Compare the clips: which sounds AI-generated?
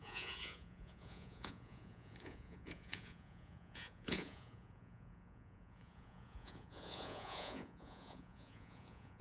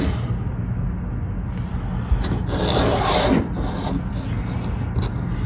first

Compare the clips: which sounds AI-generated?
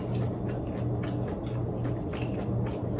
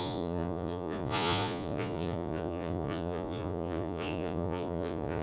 second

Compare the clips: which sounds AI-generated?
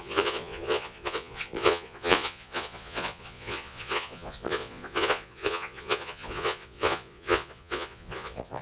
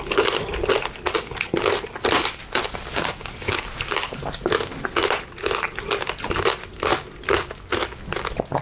first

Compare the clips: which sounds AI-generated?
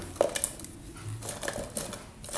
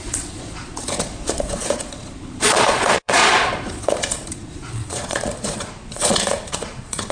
second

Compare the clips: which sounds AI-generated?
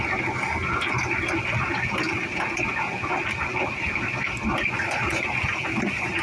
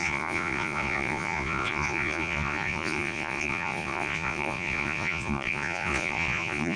second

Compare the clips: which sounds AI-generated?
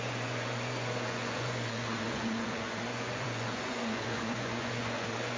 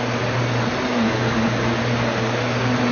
first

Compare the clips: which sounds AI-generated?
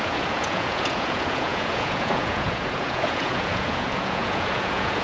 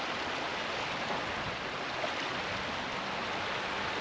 first